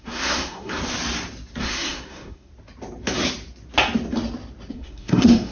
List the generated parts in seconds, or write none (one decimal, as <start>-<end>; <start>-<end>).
0.0-0.8; 1.6-2.5; 4.7-5.5